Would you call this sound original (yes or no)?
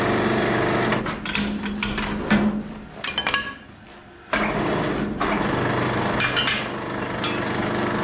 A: yes